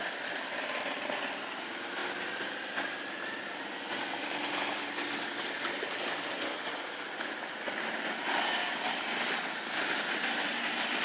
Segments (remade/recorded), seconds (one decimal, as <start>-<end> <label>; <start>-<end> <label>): 0.0-11.0 recorded